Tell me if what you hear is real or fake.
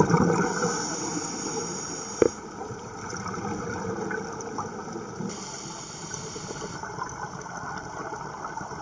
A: real